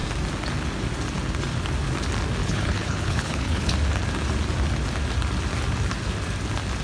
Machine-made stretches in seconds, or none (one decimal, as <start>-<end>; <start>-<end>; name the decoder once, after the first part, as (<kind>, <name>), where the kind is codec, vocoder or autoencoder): 2.4-3.7 (codec, HILCodec)